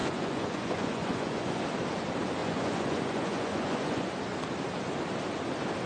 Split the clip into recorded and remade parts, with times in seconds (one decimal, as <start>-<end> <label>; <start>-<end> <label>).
0.0-1.6 remade; 1.6-2.4 recorded; 2.4-4.1 remade; 4.1-5.9 recorded

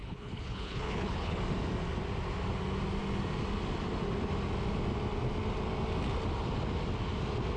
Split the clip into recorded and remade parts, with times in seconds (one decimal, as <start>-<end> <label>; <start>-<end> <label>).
0.0-1.4 remade; 1.4-7.6 recorded